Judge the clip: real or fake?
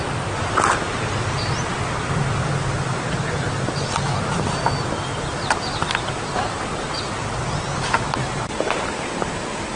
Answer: real